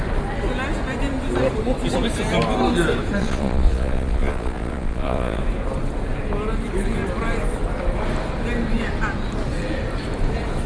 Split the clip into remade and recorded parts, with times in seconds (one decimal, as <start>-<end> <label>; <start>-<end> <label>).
0.0-3.2 recorded; 3.2-5.4 remade; 5.4-10.7 recorded